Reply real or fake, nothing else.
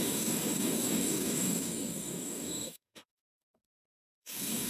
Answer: fake